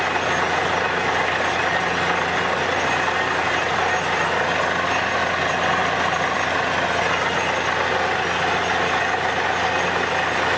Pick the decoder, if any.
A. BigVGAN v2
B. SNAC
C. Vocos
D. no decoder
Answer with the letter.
D